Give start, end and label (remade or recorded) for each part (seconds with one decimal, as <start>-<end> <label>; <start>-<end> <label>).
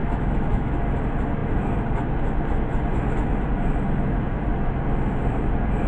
0.0-0.7 remade; 0.7-5.9 recorded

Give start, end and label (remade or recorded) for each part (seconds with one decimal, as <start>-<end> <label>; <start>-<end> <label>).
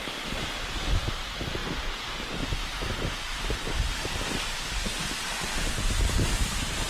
0.0-6.9 recorded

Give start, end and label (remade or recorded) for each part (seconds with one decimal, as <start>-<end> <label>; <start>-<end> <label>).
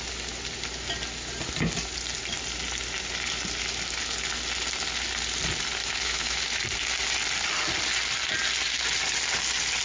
0.0-5.8 recorded; 5.8-6.4 remade; 6.4-9.8 recorded